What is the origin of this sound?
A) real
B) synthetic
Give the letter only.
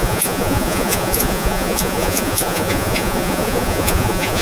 B